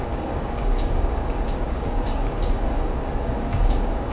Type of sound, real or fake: fake